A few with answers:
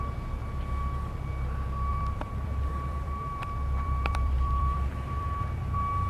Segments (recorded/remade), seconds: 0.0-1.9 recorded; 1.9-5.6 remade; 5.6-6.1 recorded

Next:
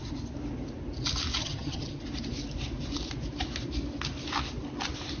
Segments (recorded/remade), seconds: 0.0-1.4 recorded; 1.4-2.0 remade; 2.0-5.2 recorded

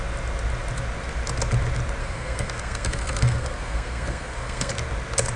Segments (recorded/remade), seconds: 0.0-2.0 recorded; 2.0-4.7 remade; 4.7-5.4 recorded